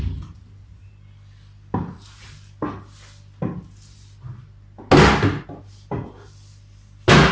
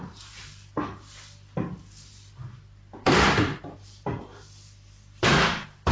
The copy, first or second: second